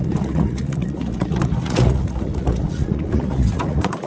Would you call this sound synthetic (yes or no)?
yes